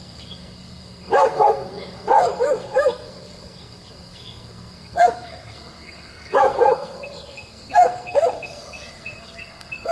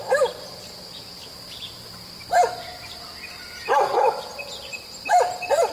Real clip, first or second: second